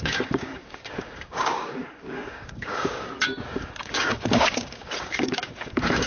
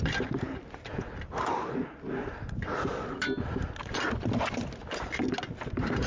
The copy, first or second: first